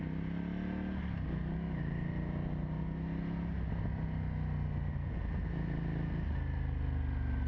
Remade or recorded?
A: recorded